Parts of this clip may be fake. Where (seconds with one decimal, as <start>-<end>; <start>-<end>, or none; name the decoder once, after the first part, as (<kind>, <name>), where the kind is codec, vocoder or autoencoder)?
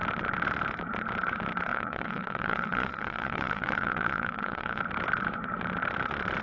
1.7-4.8 (vocoder, Vocos)